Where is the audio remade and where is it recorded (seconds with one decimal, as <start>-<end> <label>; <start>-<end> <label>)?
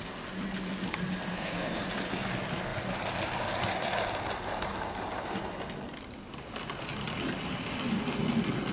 0.0-1.3 recorded; 1.3-1.8 remade; 1.8-8.7 recorded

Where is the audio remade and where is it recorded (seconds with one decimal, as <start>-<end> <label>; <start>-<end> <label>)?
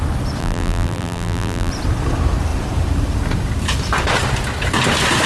0.0-0.4 recorded; 0.4-1.7 remade; 1.7-5.3 recorded